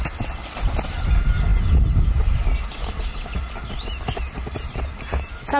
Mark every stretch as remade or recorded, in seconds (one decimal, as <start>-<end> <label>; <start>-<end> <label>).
0.0-5.6 recorded

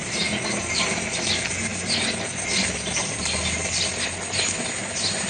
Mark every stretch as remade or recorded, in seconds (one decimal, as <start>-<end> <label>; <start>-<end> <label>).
0.0-5.3 recorded

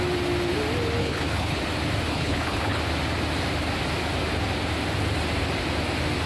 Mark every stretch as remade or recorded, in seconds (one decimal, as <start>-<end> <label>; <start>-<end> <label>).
0.0-1.0 recorded; 1.0-1.6 remade; 1.6-2.1 recorded; 2.1-2.8 remade; 2.8-6.3 recorded

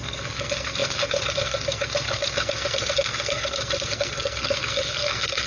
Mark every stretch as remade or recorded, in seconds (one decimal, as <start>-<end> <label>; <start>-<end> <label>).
0.0-5.5 remade